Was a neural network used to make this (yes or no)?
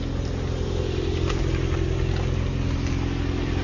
no